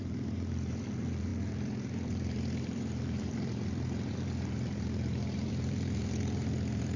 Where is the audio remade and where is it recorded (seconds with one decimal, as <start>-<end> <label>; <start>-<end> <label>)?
0.0-7.0 remade